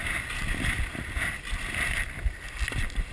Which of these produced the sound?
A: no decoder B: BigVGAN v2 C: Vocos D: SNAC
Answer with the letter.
A